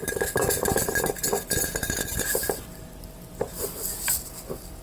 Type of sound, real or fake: real